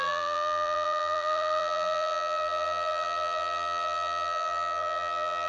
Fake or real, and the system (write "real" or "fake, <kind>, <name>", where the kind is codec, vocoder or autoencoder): fake, vocoder, BigVGAN v2